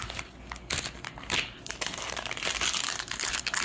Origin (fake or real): real